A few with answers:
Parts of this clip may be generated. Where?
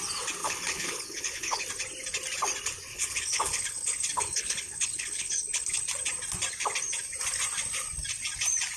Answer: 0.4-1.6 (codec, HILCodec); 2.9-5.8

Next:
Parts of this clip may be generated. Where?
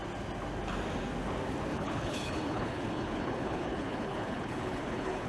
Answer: 1.7-5.3 (codec, HILCodec)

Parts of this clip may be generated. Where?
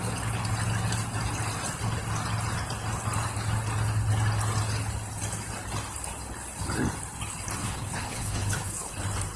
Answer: 7.6-8.9 (codec, HILCodec)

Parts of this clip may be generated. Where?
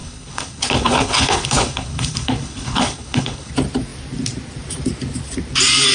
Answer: 0.0-3.5 (codec, HILCodec)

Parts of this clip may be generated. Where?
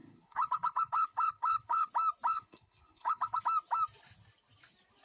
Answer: 0.0-1.9 (codec, HILCodec); 2.3-3.4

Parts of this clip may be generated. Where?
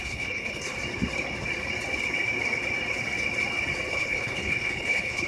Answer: 0.0-0.7 (codec, HILCodec); 3.9-5.3